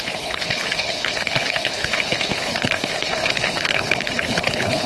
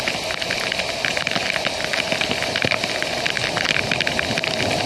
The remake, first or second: first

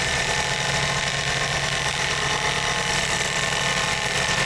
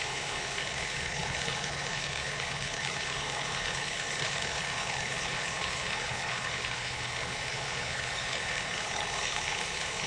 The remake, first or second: second